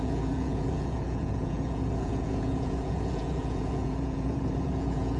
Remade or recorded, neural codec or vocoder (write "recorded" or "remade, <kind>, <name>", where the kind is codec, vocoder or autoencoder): remade, vocoder, Vocos